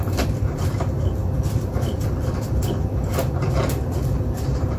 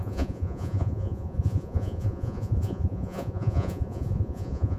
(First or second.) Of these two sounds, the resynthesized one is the second